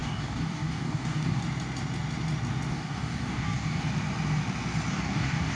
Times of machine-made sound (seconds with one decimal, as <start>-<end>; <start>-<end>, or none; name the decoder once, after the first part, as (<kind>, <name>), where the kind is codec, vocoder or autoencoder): 0.0-1.4 (codec, DAC); 2.7-3.8; 4.9-5.6